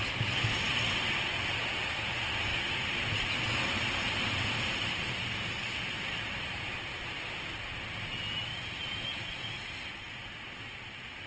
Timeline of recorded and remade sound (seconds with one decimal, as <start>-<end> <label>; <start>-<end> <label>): 0.0-2.5 recorded; 2.5-6.8 remade; 6.8-11.3 recorded